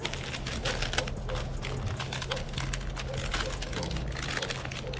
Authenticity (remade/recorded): recorded